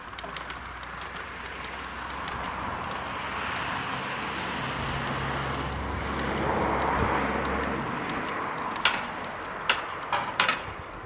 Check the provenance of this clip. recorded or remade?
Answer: recorded